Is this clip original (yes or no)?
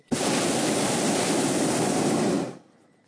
yes